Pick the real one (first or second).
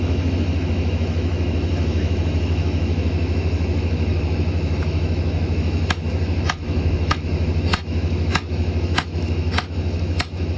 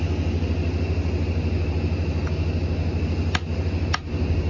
second